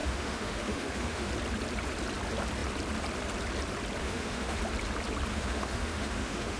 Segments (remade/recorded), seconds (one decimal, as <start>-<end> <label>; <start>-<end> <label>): 0.0-1.3 remade; 1.3-4.0 recorded; 4.0-4.6 remade; 4.6-5.3 recorded; 5.3-6.6 remade